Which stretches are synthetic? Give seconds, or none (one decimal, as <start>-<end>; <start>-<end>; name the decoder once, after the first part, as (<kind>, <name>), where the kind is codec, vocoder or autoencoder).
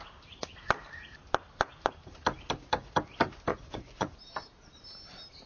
3.5-4.2 (vocoder, Vocos)